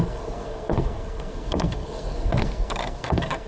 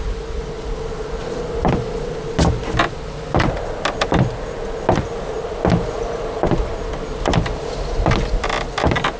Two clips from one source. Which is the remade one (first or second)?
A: first